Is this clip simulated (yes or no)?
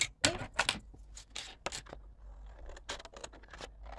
no